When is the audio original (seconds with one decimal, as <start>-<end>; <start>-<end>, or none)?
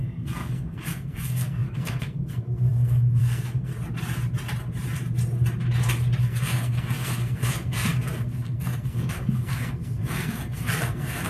3.7-6.2